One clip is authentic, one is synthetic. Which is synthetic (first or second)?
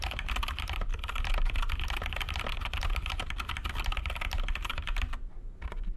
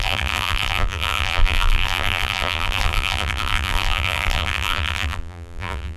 second